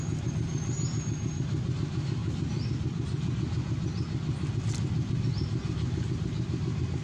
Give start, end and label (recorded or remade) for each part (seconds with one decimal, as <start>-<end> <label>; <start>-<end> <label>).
0.0-7.0 recorded

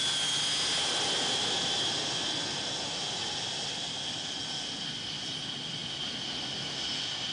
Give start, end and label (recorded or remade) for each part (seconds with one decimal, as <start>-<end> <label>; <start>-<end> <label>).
0.0-7.3 recorded

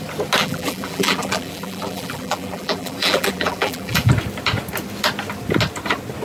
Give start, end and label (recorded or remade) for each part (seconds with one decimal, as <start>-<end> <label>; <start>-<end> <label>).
0.0-0.4 recorded; 0.4-4.1 remade; 4.1-6.2 recorded

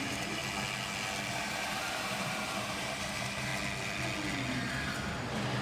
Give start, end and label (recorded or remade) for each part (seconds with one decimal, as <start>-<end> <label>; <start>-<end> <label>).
0.0-0.4 remade; 0.4-1.3 recorded; 1.3-3.5 remade; 3.5-4.5 recorded; 4.5-5.6 remade